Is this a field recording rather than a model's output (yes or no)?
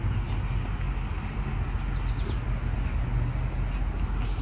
yes